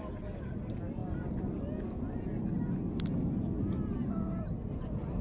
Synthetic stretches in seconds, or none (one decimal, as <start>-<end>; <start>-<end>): none